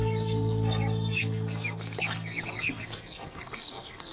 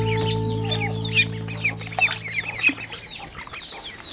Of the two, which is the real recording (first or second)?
second